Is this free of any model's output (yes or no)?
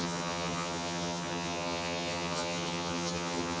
no